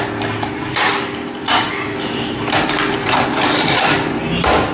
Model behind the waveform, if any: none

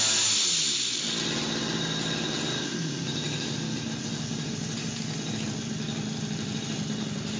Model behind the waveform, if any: none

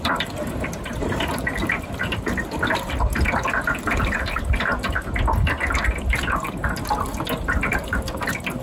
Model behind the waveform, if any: none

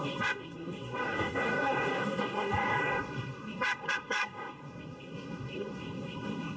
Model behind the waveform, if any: codec, SNAC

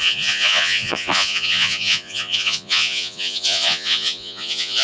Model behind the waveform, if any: vocoder, Vocos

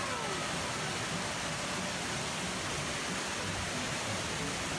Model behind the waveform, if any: none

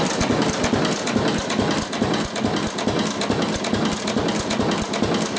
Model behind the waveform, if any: none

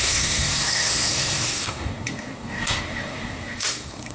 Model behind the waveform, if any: codec, SNAC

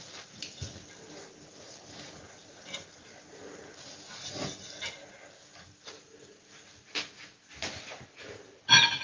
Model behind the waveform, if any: none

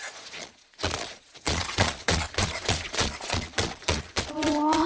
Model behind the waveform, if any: vocoder, Vocos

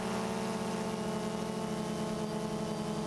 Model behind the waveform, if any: none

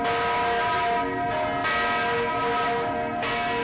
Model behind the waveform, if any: none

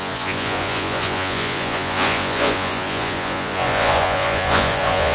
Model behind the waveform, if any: vocoder, Vocos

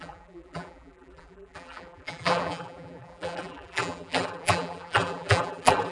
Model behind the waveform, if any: vocoder, BigVGAN v2